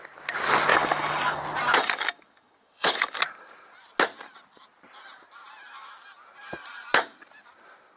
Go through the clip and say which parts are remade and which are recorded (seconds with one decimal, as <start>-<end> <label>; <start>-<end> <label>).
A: 0.0-0.7 recorded; 0.7-1.4 remade; 1.4-1.8 recorded; 1.8-3.2 remade; 3.2-8.0 recorded